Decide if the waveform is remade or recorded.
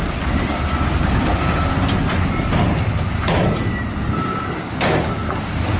recorded